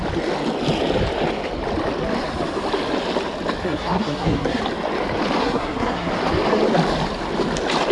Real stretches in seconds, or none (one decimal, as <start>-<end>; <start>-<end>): 0.0-3.6; 4.6-5.4; 6.1-7.9